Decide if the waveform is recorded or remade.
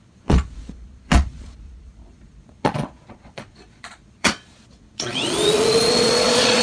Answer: remade